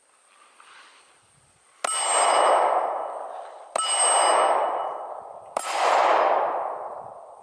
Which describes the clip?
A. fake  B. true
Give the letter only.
B